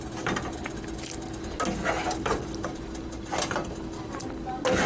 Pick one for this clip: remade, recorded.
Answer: recorded